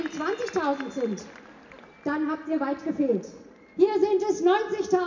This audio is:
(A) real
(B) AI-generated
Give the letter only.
A